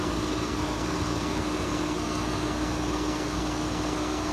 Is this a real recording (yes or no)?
no